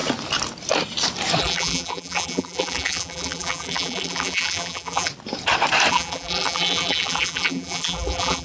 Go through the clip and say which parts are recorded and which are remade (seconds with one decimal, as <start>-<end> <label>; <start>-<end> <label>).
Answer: 0.0-1.4 recorded; 1.4-5.1 remade; 5.1-5.9 recorded; 5.9-8.4 remade